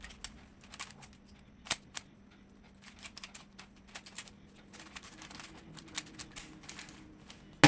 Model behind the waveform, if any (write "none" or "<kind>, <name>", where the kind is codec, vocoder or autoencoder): none